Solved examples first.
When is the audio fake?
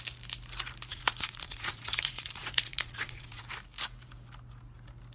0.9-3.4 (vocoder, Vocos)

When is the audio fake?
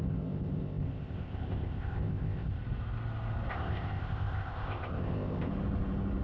0.0-2.6 (codec, ZipCodec); 3.5-5.5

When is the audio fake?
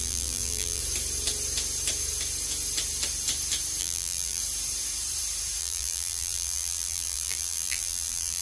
0.0-0.8 (vocoder, BigVGAN v2); 3.8-4.4; 5.6-8.4